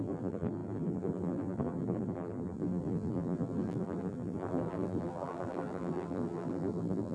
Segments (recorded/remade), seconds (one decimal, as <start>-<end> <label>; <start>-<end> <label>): 0.0-7.1 remade